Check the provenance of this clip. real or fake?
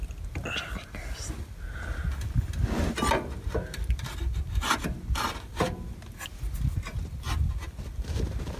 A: real